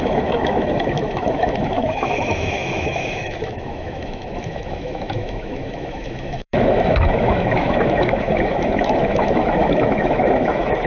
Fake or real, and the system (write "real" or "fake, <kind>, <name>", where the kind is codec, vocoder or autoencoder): fake, autoencoder, DAC-VAE